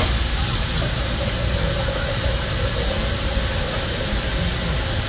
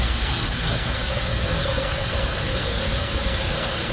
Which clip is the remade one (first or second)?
second